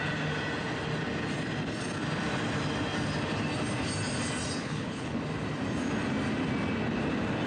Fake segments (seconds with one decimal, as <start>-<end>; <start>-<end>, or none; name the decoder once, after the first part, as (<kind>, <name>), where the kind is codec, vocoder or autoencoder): 4.6-5.2 (codec, HILCodec)